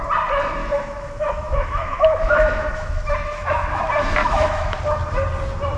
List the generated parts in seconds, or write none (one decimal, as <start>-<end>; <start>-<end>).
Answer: 0.6-3.8; 4.2-4.8